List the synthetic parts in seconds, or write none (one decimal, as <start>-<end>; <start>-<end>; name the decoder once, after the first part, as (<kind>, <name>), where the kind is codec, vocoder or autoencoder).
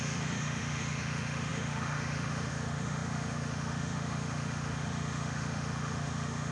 0.0-6.5 (autoencoder, DAC-VAE)